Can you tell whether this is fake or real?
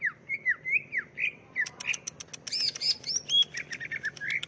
real